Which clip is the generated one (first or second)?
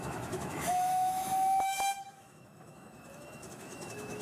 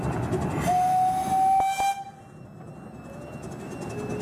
first